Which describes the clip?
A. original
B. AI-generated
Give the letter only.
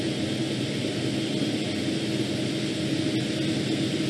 A